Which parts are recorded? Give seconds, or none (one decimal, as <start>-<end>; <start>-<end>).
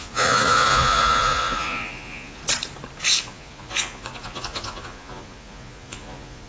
2.4-3.2